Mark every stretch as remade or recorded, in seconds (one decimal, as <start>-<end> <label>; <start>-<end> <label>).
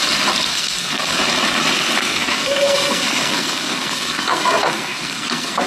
0.0-0.5 recorded; 0.5-1.0 remade; 1.0-2.0 recorded; 2.0-5.7 remade